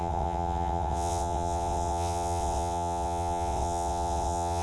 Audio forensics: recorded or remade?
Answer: remade